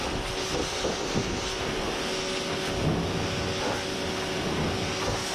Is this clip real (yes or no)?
yes